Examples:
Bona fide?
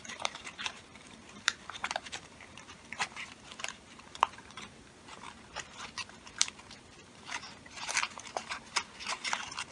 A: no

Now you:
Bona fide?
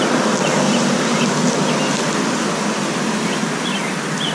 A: yes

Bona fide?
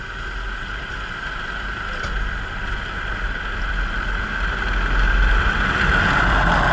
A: no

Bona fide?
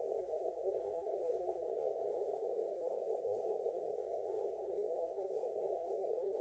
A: no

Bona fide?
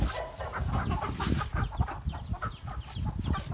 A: yes